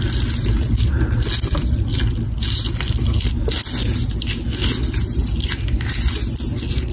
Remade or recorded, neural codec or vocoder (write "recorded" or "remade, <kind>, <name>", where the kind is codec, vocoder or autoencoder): recorded